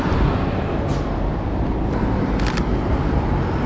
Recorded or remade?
recorded